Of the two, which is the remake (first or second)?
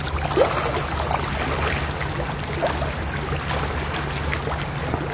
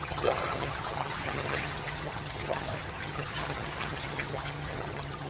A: second